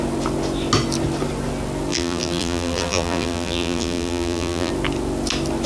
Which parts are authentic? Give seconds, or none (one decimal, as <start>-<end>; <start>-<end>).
0.0-1.9; 4.7-5.7